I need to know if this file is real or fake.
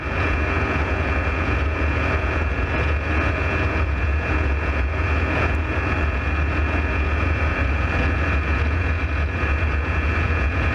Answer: fake